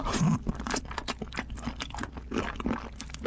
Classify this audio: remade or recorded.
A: recorded